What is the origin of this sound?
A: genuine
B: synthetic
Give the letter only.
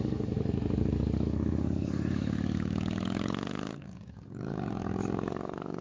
B